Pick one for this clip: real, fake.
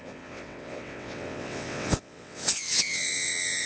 fake